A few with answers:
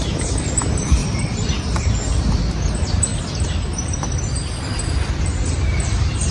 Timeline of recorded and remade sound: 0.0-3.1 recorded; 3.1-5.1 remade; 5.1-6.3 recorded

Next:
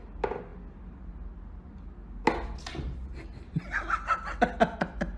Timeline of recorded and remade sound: 0.0-5.2 recorded

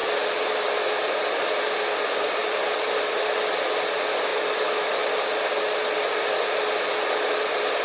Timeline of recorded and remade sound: 0.0-0.8 remade; 0.8-2.4 recorded; 2.4-3.0 remade; 3.0-7.8 recorded

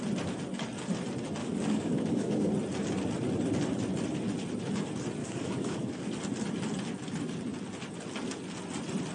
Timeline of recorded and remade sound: 0.0-1.4 recorded; 1.4-2.5 remade; 2.5-5.2 recorded; 5.2-6.1 remade; 6.1-9.1 recorded

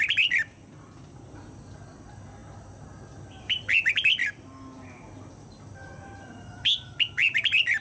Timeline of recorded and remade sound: 0.0-7.8 recorded